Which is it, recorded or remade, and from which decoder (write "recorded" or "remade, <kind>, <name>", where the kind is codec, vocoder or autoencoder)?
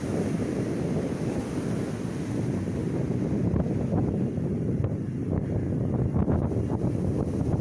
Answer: recorded